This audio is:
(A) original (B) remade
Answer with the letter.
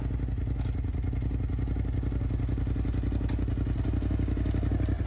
A